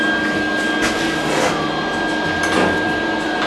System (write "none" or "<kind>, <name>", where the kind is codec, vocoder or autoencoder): none